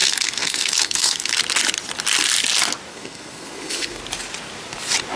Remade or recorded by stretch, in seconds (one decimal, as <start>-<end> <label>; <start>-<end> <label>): 0.0-1.4 remade; 1.4-2.9 recorded; 2.9-4.0 remade; 4.0-5.2 recorded